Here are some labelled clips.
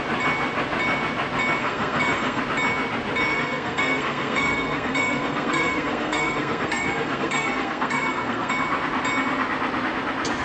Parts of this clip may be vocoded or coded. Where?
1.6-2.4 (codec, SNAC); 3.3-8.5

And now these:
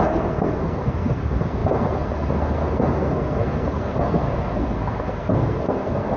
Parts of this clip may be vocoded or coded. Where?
0.0-6.2 (codec, SNAC)

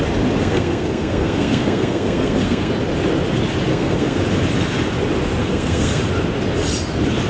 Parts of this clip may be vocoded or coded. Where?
0.4-2.7 (codec, SNAC); 3.7-4.2; 5.4-6.0

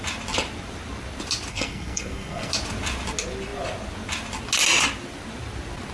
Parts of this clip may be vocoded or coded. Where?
1.5-2.5 (codec, SNAC)

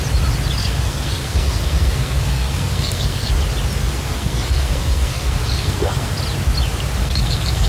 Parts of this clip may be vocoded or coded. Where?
0.6-3.3 (codec, SNAC); 3.8-6.1; 7.0-7.7